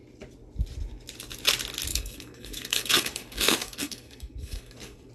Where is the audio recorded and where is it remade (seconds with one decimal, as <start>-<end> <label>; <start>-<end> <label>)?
0.0-1.9 recorded; 1.9-5.1 remade